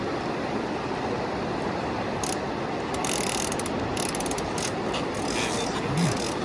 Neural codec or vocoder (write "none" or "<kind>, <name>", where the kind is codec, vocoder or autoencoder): none